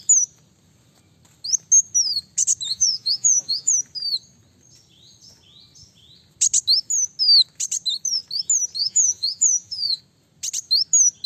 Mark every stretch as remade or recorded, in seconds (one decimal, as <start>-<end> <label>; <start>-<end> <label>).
0.0-2.7 recorded; 2.7-3.7 remade; 3.7-8.8 recorded; 8.8-10.0 remade; 10.0-11.3 recorded